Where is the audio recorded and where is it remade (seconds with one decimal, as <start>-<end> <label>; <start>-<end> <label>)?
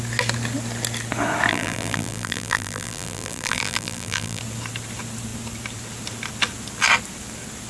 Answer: 0.0-1.5 recorded; 1.5-4.4 remade; 4.4-7.7 recorded